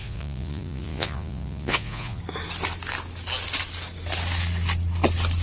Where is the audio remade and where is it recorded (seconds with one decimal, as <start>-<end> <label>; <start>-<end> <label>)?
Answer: 0.0-2.2 remade; 2.2-5.4 recorded

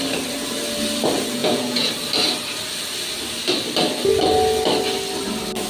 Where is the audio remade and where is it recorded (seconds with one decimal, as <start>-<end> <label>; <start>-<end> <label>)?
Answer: 0.0-1.4 recorded; 1.4-1.9 remade; 1.9-5.7 recorded

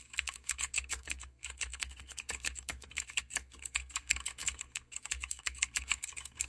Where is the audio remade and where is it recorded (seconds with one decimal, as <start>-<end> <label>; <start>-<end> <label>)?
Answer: 0.0-6.5 remade

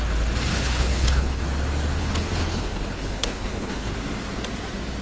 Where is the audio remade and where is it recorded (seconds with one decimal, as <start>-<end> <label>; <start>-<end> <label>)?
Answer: 0.0-0.5 recorded; 0.5-1.4 remade; 1.4-2.0 recorded; 2.0-3.9 remade; 3.9-5.0 recorded

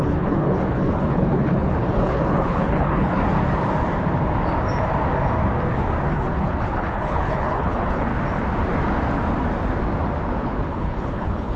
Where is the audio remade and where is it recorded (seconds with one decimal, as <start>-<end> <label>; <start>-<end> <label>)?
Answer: 0.0-3.2 remade; 3.2-6.1 recorded; 6.1-8.1 remade; 8.1-10.4 recorded; 10.4-11.6 remade

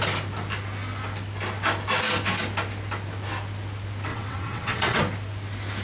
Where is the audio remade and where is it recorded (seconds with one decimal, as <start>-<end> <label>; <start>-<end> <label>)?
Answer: 0.0-4.1 recorded; 4.1-5.0 remade; 5.0-5.8 recorded

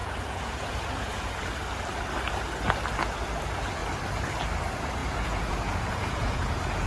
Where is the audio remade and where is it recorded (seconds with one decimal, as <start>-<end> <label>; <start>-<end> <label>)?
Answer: 0.0-1.4 remade; 1.4-5.0 recorded; 5.0-6.9 remade

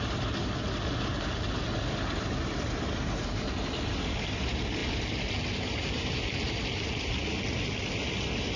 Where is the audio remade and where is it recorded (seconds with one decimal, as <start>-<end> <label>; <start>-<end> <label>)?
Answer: 0.0-8.6 recorded